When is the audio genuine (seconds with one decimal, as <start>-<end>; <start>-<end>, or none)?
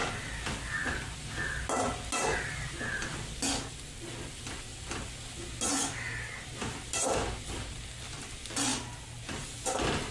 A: 0.0-10.1